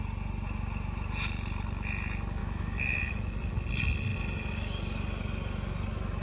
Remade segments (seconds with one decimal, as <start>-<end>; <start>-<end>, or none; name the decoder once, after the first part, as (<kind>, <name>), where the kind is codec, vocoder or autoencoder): 2.4-3.0 (autoencoder, DAC-VAE)